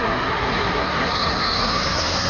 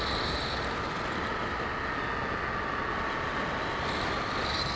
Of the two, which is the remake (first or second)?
first